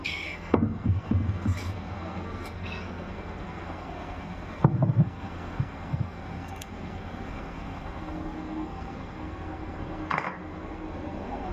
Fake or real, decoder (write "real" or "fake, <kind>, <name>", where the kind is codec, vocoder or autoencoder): fake, codec, SNAC